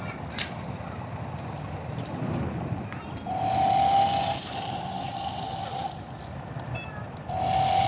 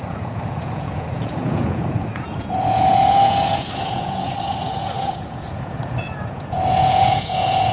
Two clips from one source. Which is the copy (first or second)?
second